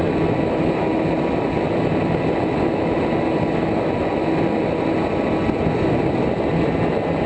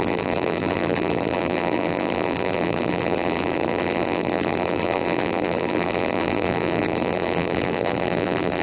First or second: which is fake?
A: second